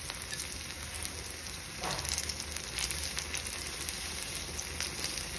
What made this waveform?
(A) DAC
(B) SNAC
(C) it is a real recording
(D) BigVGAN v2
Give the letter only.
C